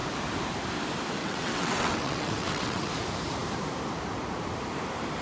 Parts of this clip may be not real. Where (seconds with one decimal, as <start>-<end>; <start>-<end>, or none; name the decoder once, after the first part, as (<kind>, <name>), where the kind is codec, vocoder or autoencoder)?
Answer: 1.2-2.9 (vocoder, WaveNeXt)